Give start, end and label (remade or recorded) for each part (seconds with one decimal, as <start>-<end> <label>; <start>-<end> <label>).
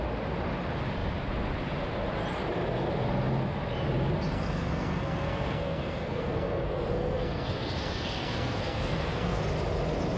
0.0-4.3 recorded; 4.3-9.4 remade; 9.4-10.2 recorded